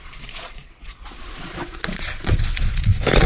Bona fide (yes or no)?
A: no